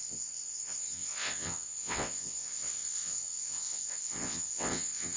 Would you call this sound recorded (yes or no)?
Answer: no